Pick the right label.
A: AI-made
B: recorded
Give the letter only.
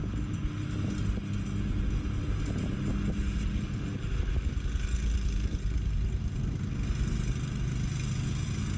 B